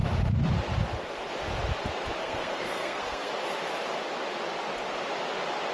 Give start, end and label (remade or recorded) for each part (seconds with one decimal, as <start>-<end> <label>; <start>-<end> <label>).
0.0-2.2 recorded; 2.2-3.3 remade; 3.3-5.7 recorded